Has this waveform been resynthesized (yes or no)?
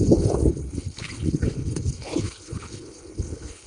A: yes